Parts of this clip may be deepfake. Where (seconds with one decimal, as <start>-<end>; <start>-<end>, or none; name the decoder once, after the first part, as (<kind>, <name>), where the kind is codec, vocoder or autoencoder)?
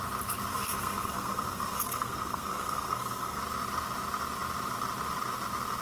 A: 0.5-3.4 (codec, SNAC)